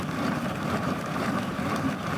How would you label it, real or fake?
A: fake